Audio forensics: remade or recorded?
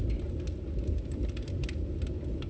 recorded